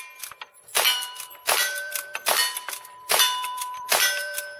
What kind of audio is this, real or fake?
fake